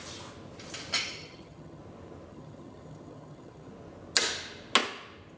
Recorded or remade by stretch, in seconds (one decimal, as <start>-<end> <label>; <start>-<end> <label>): 0.0-1.1 recorded; 1.1-1.8 remade; 1.8-2.3 recorded; 2.3-3.7 remade; 3.7-5.4 recorded